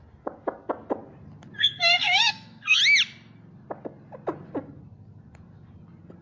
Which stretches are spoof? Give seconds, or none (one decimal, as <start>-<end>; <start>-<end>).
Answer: 1.6-2.8

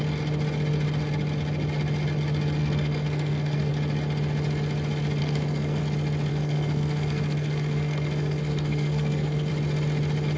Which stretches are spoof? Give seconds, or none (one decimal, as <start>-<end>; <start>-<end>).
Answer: 2.6-3.7; 5.2-5.8; 6.3-9.5

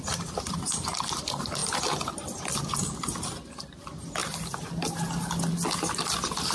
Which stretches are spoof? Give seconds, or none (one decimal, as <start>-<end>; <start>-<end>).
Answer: none

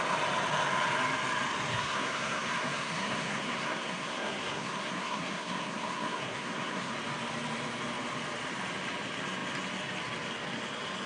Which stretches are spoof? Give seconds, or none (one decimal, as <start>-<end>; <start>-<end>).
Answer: 1.7-6.9

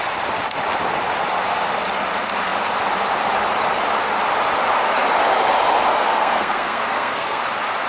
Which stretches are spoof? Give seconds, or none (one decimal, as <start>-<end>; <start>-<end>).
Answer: 5.9-7.4

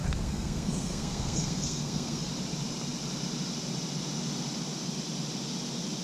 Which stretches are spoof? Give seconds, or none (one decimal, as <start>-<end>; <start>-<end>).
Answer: 0.0-2.3